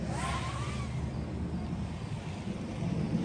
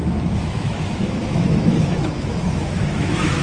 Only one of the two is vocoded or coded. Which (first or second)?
second